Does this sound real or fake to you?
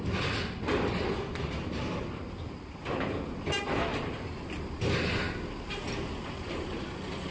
real